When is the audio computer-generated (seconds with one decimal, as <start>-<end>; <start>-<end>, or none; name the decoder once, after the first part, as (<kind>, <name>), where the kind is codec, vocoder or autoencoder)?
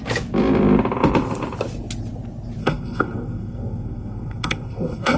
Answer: 2.6-5.2 (codec, SNAC)